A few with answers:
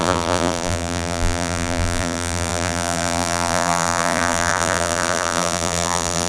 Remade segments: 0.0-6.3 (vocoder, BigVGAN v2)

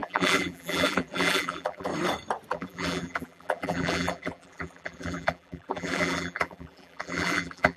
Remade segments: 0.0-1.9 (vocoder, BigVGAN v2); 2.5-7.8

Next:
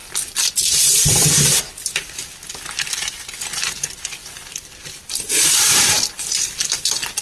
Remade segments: 4.2-6.6 (vocoder, BigVGAN v2)

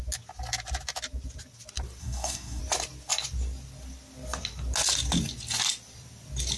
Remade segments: 2.0-2.6 (codec, SNAC)

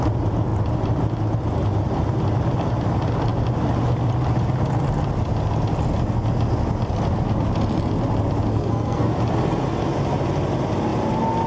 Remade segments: 8.5-9.2 (codec, SNAC)

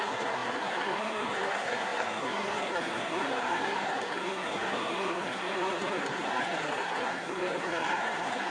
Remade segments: 0.0-8.5 (codec, SNAC)